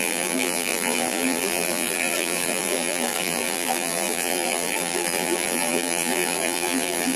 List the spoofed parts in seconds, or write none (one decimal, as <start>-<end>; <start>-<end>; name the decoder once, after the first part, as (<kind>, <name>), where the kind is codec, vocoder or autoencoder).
0.0-7.2 (vocoder, BigVGAN v2)